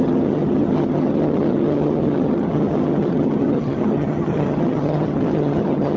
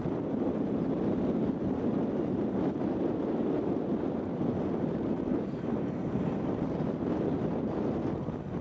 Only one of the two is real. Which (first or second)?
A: second